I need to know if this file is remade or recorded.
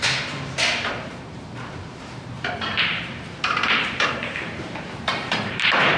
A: remade